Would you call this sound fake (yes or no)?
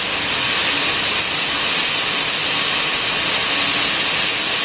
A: no